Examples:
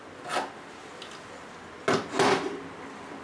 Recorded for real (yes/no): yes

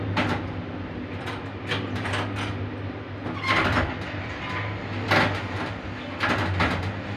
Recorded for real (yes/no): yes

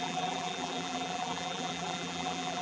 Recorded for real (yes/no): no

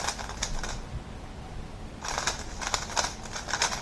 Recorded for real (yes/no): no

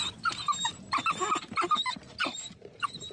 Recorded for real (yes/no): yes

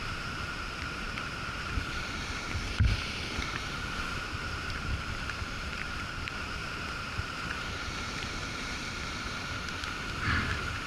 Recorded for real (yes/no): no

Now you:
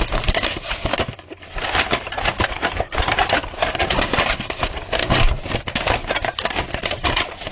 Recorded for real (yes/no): no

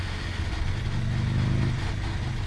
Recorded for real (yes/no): yes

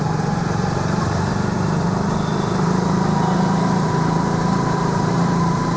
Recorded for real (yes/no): no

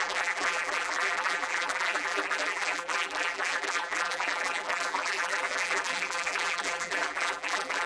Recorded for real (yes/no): no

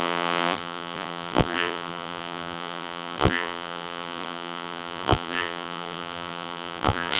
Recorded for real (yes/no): no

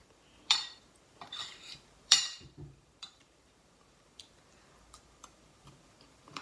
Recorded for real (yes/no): no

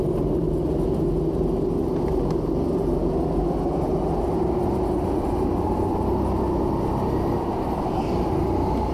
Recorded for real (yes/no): yes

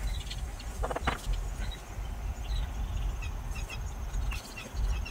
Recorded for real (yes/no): yes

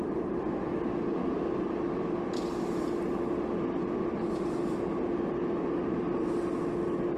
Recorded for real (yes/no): yes